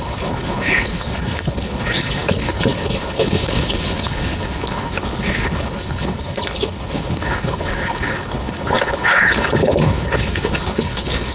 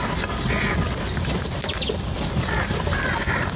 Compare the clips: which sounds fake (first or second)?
first